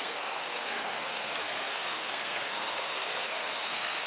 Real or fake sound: fake